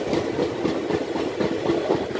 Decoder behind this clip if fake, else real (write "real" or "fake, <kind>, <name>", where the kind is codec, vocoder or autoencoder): real